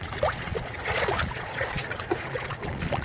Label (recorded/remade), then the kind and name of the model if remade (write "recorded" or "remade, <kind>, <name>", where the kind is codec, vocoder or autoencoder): remade, vocoder, Vocos